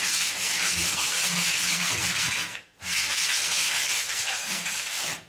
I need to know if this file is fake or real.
fake